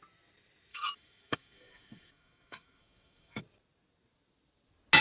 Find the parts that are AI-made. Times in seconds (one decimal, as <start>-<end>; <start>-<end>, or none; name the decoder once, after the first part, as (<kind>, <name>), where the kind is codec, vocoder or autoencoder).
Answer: 0.7-3.4 (autoencoder, DAC-VAE)